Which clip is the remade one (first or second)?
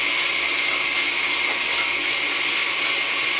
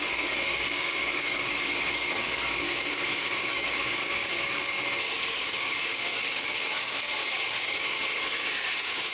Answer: second